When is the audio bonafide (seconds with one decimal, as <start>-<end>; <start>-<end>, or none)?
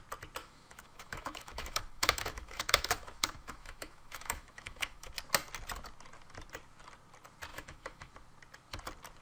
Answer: 0.0-0.4; 5.1-7.5; 8.1-9.2